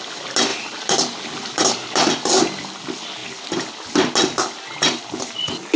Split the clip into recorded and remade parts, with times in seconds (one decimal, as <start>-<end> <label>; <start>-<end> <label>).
0.0-0.5 recorded; 0.5-2.1 remade; 2.1-5.8 recorded